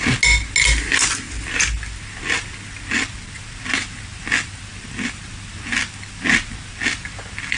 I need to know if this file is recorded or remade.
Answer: recorded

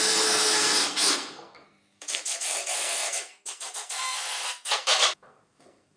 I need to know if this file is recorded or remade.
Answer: remade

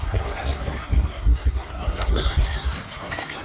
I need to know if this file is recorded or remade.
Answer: remade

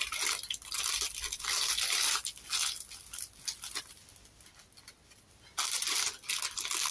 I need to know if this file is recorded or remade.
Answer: recorded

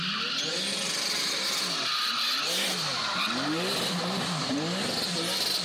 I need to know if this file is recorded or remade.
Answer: recorded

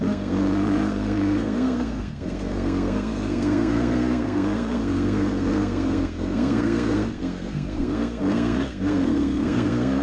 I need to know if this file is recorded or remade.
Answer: remade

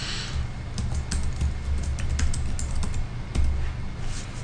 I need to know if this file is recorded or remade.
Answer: recorded